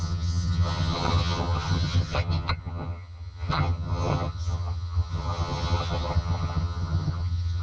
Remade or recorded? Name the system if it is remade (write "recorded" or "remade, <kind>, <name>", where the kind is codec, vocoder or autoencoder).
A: remade, vocoder, HiFi-GAN